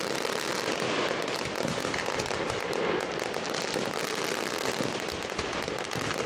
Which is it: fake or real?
real